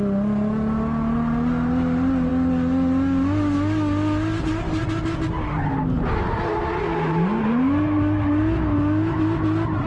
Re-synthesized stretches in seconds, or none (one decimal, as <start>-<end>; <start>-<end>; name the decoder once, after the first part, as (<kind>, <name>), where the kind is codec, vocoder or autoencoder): none